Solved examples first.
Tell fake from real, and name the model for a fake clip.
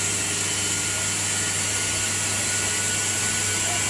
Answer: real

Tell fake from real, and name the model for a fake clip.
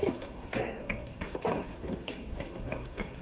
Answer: fake, codec, SNAC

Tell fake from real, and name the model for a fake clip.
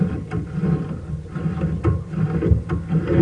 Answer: real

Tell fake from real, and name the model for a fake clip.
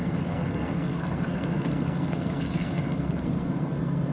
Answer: fake, codec, SNAC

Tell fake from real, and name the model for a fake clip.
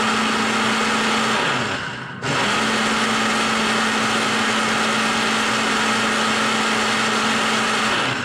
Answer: real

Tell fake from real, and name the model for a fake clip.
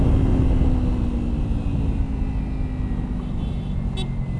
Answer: real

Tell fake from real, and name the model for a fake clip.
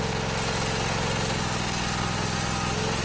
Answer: real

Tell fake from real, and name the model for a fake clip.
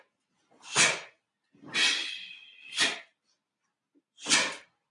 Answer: real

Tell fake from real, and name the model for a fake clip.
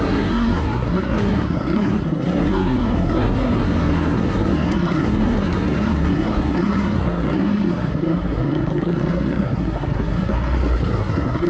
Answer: fake, codec, SNAC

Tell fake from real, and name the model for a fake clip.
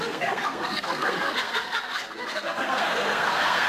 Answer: fake, codec, SNAC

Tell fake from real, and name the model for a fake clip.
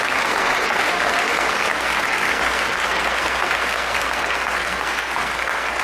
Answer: fake, codec, SNAC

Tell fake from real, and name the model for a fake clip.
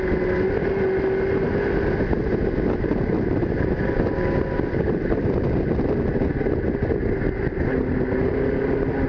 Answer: real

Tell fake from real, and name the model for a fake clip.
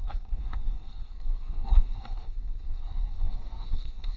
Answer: fake, codec, SNAC